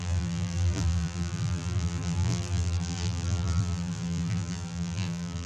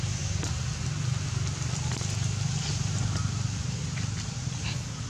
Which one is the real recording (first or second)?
second